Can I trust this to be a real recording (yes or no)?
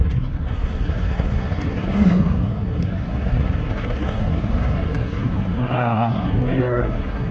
no